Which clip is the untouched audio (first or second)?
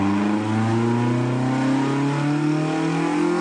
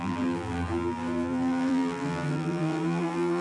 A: first